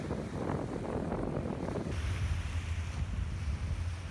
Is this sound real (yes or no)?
yes